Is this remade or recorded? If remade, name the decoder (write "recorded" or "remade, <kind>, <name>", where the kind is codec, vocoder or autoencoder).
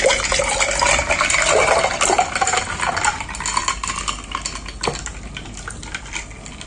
recorded